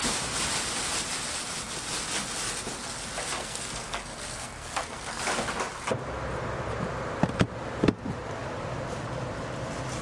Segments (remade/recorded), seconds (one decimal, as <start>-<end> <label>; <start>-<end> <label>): 0.0-3.4 recorded; 3.4-5.2 remade; 5.2-10.0 recorded

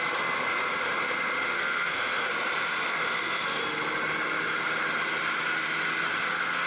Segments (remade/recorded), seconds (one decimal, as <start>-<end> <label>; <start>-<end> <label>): 0.0-1.5 recorded; 1.5-2.3 remade; 2.3-2.9 recorded; 2.9-3.6 remade; 3.6-6.7 recorded

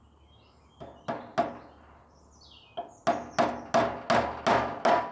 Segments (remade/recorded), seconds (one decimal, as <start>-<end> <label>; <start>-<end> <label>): 0.0-5.1 recorded

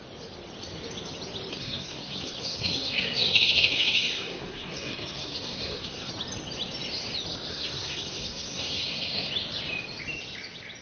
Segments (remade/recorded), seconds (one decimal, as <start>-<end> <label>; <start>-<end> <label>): 0.0-1.5 recorded; 1.5-6.1 remade; 6.1-7.5 recorded; 7.5-9.3 remade; 9.3-10.8 recorded

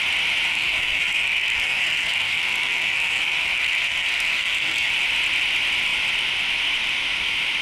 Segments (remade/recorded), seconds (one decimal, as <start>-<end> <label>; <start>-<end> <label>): 0.0-0.5 recorded; 0.5-4.9 remade; 4.9-7.6 recorded

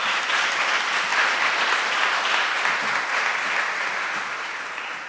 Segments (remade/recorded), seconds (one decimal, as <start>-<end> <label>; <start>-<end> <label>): 0.0-5.1 recorded